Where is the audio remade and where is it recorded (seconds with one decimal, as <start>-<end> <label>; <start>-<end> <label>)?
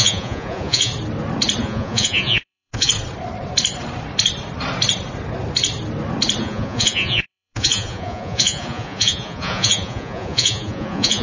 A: 0.0-0.9 remade; 0.9-1.6 recorded; 1.6-2.9 remade; 2.9-6.4 recorded; 6.4-11.2 remade